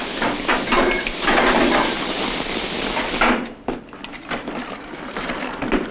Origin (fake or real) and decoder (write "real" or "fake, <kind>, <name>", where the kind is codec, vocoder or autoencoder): real